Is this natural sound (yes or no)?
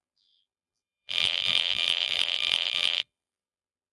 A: no